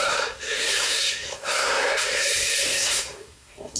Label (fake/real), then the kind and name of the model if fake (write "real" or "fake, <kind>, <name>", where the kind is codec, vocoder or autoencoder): fake, codec, SNAC